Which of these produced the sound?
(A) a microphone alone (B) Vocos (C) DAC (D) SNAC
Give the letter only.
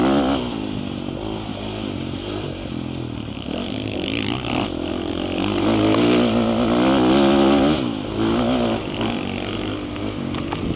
A